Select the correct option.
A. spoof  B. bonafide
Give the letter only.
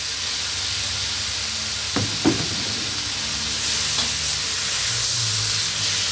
B